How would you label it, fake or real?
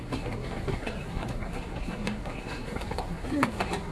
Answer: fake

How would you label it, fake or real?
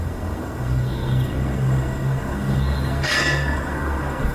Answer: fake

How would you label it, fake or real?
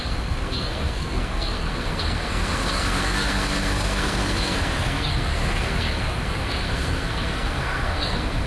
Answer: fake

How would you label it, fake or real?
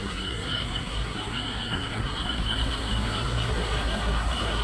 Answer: fake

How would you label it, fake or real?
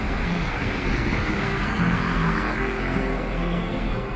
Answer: fake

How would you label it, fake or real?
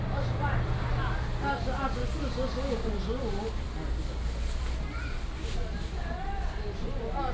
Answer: real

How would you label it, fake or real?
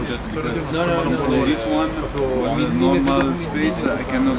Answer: real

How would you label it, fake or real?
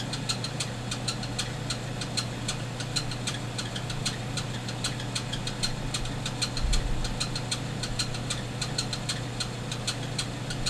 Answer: real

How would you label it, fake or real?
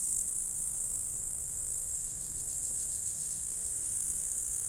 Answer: fake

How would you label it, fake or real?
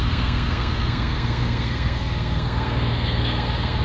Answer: fake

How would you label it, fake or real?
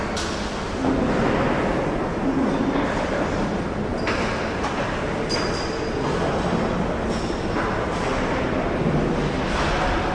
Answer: real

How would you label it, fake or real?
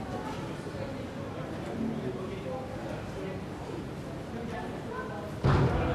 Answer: real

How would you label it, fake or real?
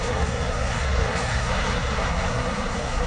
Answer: fake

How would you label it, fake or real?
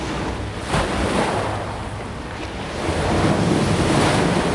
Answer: real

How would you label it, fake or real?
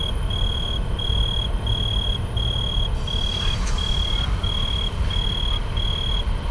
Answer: real